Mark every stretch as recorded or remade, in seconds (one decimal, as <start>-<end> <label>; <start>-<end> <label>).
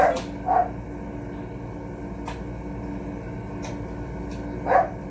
0.0-5.1 recorded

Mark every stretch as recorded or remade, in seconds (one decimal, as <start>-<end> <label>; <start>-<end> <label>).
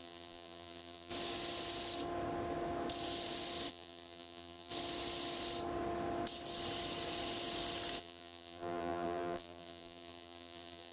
0.0-1.1 remade; 1.1-3.7 recorded; 3.7-4.7 remade; 4.7-8.0 recorded; 8.0-10.9 remade